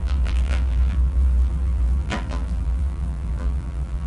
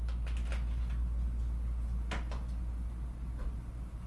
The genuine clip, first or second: second